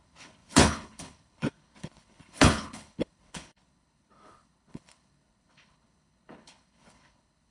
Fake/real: fake